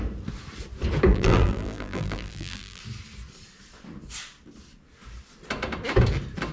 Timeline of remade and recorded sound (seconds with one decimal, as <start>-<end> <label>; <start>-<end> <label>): 0.0-1.1 recorded; 1.1-2.8 remade; 2.8-6.5 recorded